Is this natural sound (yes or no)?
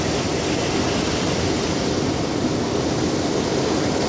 yes